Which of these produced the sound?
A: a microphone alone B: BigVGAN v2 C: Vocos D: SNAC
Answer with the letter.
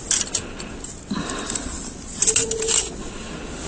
A